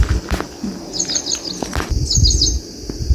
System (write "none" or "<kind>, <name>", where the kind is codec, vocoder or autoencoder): none